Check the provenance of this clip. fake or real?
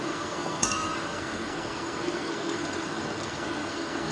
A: fake